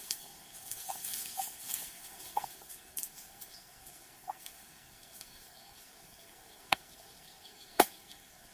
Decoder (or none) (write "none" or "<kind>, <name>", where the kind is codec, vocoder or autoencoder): codec, SNAC